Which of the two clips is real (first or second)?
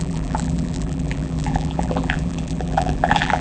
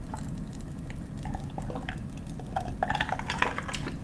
second